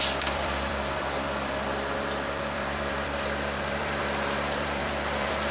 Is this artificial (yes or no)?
yes